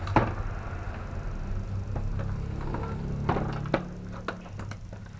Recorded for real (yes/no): yes